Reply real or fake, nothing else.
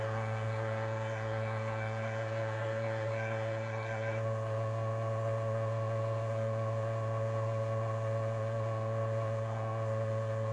fake